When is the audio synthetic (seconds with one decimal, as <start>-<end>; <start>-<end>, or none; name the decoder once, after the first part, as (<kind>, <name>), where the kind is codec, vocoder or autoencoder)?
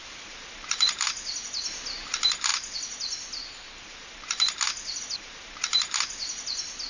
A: none